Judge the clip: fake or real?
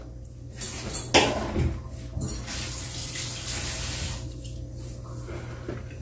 real